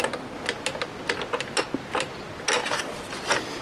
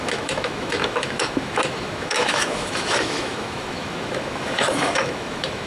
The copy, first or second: second